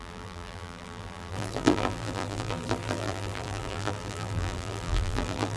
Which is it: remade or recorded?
remade